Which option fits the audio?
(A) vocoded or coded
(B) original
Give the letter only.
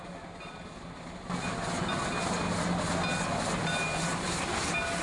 B